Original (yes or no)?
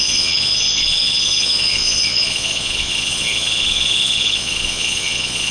no